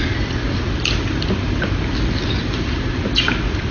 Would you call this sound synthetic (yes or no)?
no